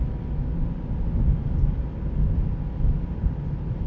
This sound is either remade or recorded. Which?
recorded